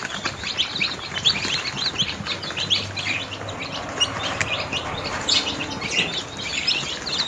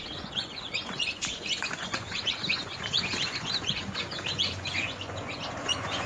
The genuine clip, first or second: first